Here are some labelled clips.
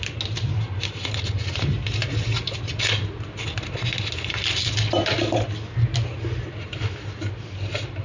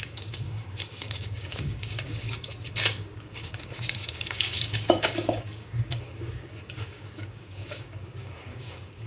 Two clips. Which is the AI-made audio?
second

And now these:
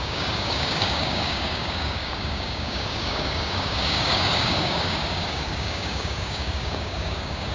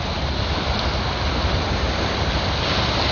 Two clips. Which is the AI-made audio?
first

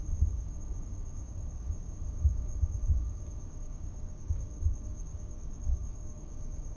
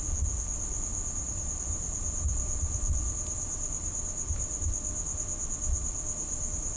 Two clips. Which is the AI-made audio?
first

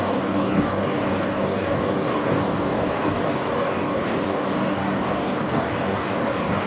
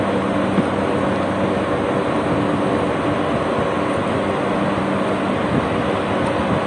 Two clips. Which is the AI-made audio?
first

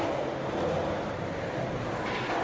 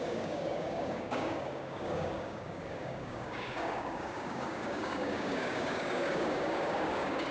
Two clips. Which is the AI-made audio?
second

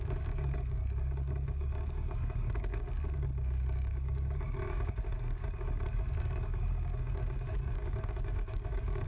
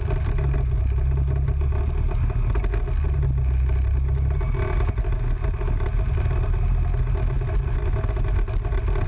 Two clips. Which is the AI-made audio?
first